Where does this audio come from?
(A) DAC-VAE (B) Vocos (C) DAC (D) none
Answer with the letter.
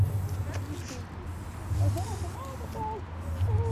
D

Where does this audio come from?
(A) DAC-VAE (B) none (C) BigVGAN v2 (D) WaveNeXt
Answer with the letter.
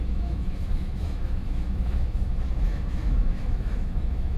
A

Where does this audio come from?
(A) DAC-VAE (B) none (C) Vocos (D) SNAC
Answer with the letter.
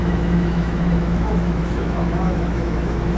A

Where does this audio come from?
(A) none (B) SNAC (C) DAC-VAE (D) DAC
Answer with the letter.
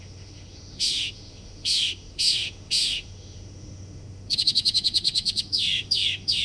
C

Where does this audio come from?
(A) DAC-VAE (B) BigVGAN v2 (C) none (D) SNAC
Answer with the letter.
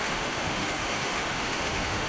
A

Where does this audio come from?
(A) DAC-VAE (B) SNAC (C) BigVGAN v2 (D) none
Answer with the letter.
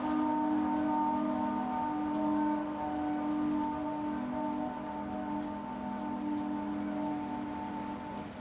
D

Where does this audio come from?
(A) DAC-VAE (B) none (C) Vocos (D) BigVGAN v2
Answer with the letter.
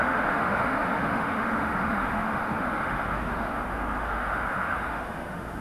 A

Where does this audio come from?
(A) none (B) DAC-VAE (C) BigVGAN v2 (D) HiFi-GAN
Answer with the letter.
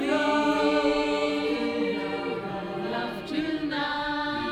A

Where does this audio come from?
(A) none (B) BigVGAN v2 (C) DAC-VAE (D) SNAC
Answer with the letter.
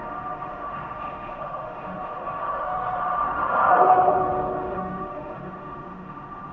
C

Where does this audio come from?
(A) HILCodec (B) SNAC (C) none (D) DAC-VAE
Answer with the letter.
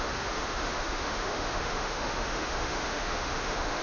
D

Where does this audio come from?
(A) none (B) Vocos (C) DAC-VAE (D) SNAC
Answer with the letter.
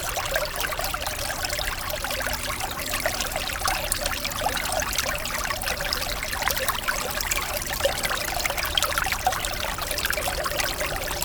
A